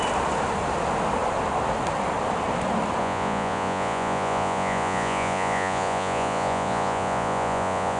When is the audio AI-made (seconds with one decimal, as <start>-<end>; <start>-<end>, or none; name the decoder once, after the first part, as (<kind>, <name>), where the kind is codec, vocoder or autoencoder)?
3.0-8.0 (vocoder, Vocos)